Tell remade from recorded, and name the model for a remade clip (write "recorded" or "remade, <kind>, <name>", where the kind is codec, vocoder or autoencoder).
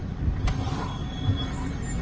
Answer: recorded